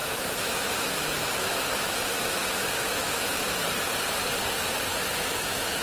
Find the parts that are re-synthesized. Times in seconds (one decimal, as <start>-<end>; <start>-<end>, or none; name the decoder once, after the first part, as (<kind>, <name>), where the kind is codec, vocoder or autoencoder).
0.0-3.5 (autoencoder, DAC-VAE); 4.9-5.8